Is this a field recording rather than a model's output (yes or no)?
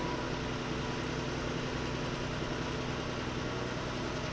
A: yes